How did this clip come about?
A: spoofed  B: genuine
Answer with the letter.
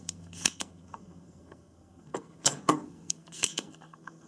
A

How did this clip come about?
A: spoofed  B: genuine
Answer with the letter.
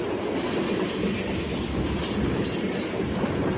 B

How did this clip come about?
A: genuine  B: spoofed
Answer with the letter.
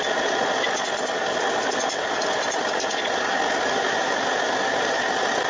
A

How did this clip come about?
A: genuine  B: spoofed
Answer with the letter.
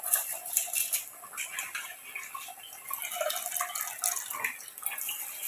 A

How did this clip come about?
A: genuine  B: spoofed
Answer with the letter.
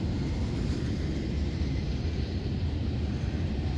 B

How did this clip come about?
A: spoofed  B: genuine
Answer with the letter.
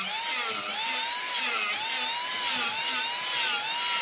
B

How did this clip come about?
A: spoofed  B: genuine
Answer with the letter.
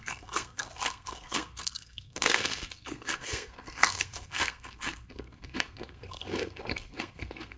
A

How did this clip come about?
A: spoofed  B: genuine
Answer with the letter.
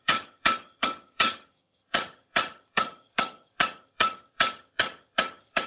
A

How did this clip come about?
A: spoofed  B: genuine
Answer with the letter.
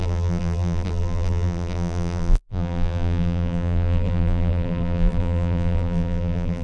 A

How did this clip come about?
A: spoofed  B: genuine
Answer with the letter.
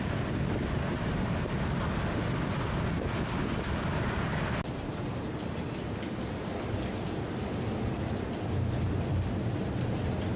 B